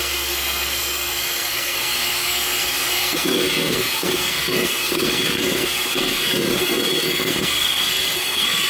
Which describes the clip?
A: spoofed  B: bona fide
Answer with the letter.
A